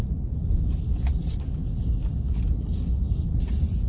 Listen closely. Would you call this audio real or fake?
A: real